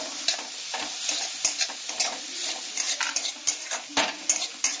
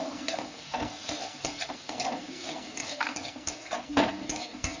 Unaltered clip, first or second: first